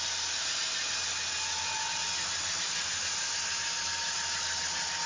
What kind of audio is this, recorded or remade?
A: recorded